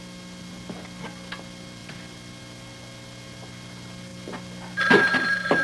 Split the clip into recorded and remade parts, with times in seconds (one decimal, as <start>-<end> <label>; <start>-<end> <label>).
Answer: 0.0-5.6 recorded